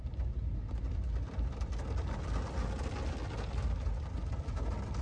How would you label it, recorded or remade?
recorded